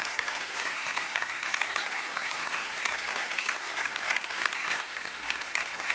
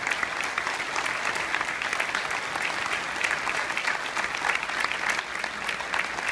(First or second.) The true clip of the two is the second